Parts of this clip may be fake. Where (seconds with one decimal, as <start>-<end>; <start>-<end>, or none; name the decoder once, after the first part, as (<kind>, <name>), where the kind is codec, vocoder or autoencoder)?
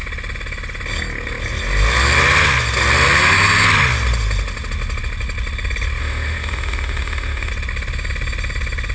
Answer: 6.0-7.5 (autoencoder, DAC-VAE)